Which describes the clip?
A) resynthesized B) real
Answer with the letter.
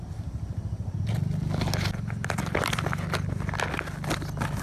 B